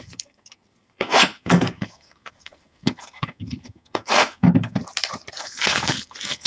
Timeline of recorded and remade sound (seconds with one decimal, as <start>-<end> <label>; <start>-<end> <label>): 0.0-4.8 remade; 4.8-5.3 recorded; 5.3-6.5 remade

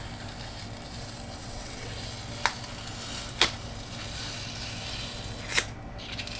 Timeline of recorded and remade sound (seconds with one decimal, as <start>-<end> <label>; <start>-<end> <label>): 0.0-1.4 recorded; 1.4-1.9 remade; 1.9-6.4 recorded

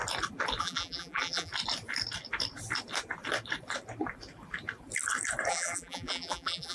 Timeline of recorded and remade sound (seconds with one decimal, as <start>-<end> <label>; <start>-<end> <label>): 0.0-0.6 recorded; 0.6-1.5 remade; 1.5-5.5 recorded; 5.5-6.7 remade

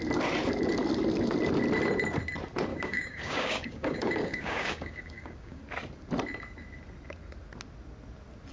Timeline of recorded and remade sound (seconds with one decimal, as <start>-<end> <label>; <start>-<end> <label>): 0.0-2.7 recorded; 2.7-5.6 remade; 5.6-8.5 recorded

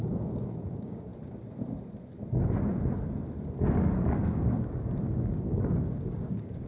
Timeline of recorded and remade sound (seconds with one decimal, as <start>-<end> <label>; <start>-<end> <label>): 0.0-1.1 remade; 1.1-3.7 recorded; 3.7-6.7 remade